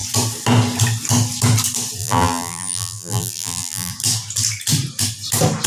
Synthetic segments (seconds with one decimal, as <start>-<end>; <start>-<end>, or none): 2.0-3.9